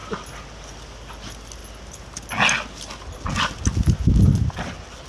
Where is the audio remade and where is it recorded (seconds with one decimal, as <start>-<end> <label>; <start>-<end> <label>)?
0.0-5.1 recorded